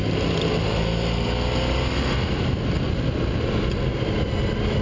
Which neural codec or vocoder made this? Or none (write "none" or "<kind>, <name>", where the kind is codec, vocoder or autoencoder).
none